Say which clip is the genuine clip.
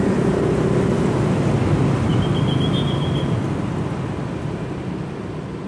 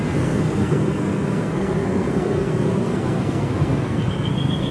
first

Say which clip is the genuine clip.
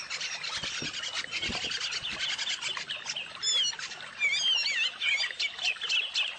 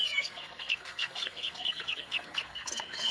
first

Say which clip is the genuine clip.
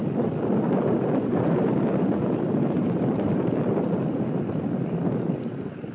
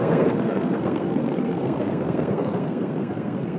first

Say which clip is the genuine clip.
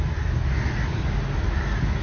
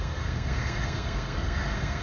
first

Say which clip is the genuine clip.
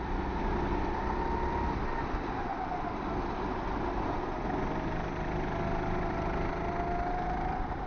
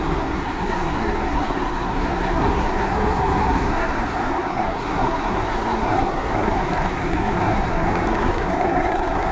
first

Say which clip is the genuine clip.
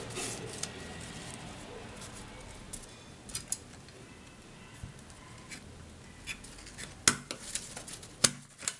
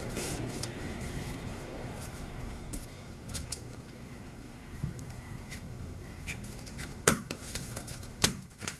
first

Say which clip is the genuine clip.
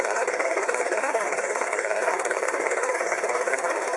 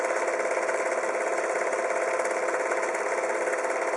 second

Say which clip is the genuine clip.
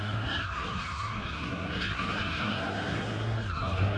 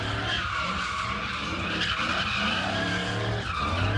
second